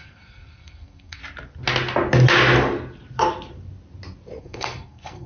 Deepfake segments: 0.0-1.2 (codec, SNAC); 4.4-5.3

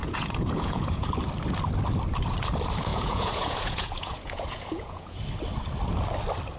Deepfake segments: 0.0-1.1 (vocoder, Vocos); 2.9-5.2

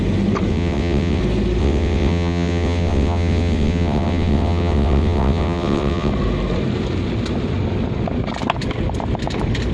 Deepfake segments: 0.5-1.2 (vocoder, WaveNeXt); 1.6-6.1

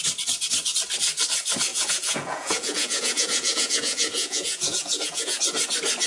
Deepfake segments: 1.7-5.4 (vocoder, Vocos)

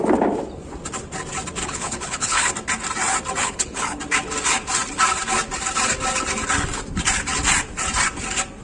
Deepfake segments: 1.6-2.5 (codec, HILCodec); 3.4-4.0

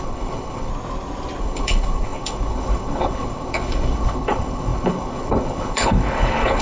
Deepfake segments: 0.0-0.7 (codec, HILCodec); 1.4-6.6